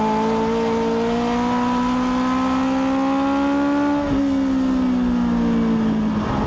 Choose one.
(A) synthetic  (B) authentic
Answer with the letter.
B